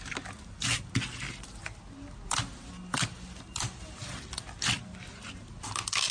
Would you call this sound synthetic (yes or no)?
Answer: no